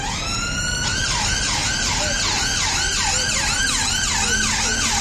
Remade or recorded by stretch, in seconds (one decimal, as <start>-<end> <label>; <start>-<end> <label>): 0.0-5.0 recorded